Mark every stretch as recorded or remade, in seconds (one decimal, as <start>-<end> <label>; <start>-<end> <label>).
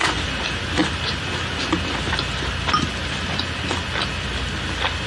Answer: 0.0-5.1 recorded